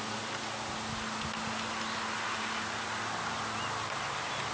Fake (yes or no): no